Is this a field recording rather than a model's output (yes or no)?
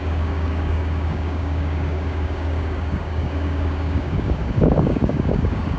no